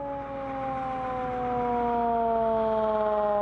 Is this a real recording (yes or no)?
yes